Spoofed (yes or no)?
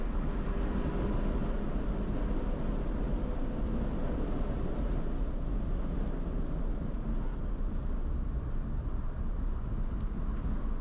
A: no